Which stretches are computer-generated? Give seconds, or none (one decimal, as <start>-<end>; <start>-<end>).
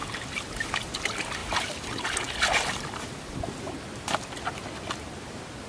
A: none